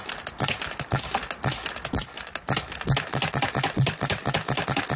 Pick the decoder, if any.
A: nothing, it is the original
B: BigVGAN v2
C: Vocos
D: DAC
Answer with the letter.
A